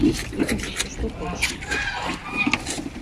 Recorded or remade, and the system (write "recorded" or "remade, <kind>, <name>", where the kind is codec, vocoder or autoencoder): recorded